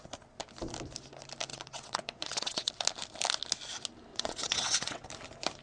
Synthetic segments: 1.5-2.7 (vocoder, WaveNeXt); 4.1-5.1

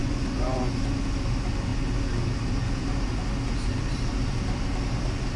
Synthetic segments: 0.0-0.7 (vocoder, Vocos)